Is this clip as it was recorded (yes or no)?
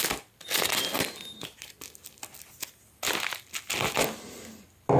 yes